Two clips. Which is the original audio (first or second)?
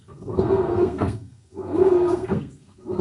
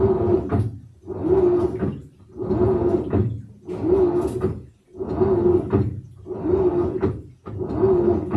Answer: second